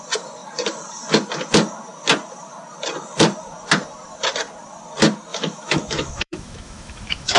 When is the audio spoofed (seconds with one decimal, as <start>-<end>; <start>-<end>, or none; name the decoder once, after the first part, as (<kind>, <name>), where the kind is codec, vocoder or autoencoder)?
5.3-7.4 (autoencoder, DAC-VAE)